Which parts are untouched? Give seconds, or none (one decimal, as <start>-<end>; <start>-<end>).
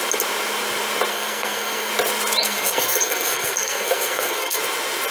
0.0-1.1; 1.9-2.4; 4.6-5.1